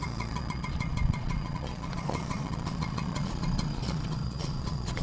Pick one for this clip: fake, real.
fake